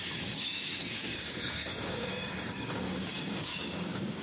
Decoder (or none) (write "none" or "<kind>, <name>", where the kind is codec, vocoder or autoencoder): codec, DAC